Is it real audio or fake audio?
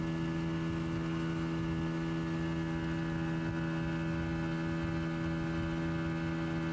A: real